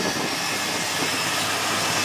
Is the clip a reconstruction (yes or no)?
no